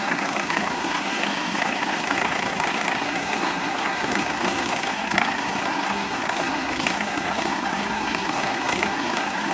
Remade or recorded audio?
remade